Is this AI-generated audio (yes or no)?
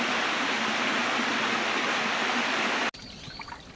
no